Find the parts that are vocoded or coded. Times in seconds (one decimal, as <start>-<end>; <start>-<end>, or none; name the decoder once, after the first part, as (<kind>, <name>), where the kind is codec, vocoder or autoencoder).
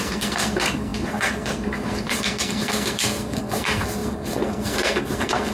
0.0-5.5 (codec, SNAC)